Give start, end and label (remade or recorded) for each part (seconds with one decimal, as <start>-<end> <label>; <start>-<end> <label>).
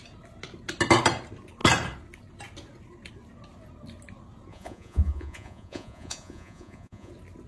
0.0-4.5 recorded; 4.5-7.1 remade; 7.1-7.5 recorded